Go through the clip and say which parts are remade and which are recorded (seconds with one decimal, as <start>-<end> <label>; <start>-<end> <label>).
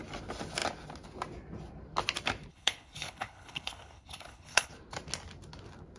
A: 0.0-2.5 recorded; 2.5-4.7 remade; 4.7-6.0 recorded